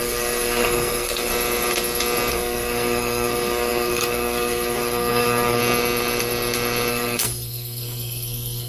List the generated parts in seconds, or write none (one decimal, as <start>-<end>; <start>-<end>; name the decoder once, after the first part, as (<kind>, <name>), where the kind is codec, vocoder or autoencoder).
0.0-1.3 (codec, SNAC); 2.3-5.6; 6.9-8.7